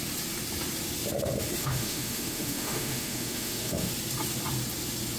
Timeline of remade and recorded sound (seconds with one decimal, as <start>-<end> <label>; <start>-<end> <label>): 0.0-1.6 recorded; 1.6-3.9 remade; 3.9-5.2 recorded